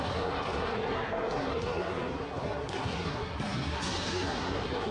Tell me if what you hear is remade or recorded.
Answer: remade